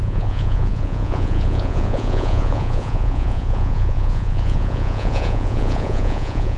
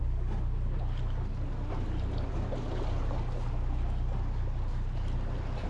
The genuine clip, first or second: second